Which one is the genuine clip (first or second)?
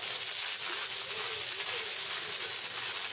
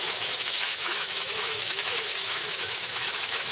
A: first